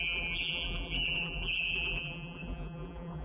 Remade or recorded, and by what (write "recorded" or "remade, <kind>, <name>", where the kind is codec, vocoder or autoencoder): remade, vocoder, BigVGAN v2